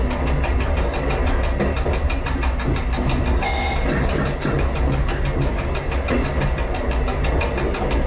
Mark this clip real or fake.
real